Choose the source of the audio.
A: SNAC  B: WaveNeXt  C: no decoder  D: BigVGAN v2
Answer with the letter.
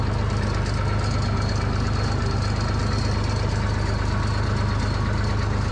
C